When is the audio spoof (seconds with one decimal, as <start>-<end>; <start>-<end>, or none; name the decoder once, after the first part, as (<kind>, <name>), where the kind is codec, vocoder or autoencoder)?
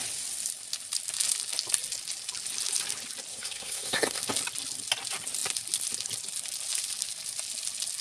3.3-4.2 (codec, SNAC)